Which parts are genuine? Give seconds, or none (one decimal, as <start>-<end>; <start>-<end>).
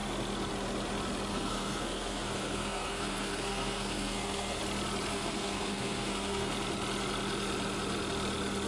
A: 0.0-1.3; 4.6-5.1; 6.5-8.7